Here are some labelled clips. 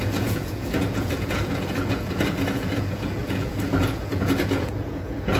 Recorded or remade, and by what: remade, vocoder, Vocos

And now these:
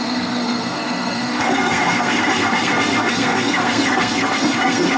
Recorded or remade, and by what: remade, codec, SNAC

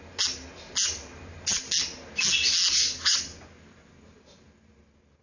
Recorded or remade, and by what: recorded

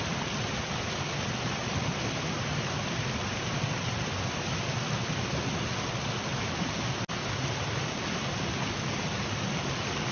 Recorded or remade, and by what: recorded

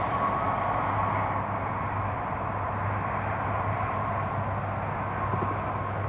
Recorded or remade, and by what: recorded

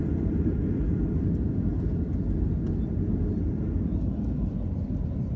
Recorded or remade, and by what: recorded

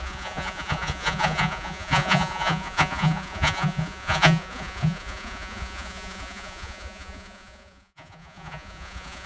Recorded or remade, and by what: remade, vocoder, Vocos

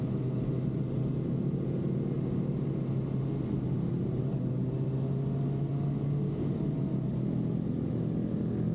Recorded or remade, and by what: recorded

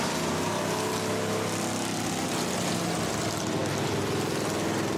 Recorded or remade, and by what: recorded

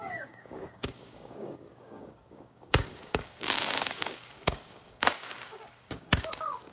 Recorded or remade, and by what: remade, codec, DAC